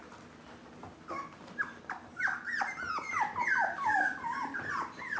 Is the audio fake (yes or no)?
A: yes